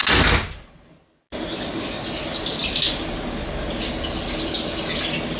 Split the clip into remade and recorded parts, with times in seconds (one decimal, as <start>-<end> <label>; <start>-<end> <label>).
0.0-5.4 recorded